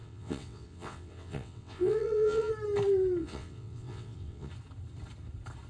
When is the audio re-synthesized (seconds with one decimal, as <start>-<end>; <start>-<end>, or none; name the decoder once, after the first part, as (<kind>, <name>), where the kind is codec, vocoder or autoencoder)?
0.0-2.5 (vocoder, WaveNeXt); 3.2-4.5